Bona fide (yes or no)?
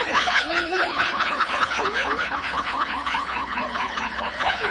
no